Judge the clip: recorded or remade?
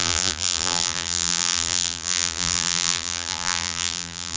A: remade